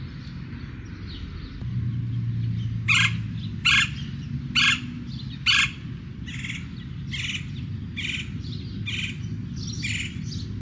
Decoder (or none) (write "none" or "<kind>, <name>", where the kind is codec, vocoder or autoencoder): none